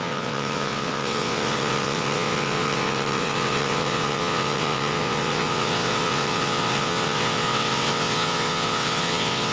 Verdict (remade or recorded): remade